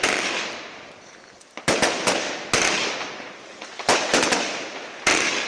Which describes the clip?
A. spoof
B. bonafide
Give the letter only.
B